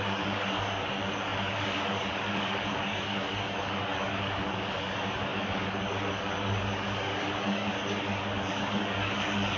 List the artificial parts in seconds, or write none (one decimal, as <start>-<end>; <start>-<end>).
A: 0.0-9.6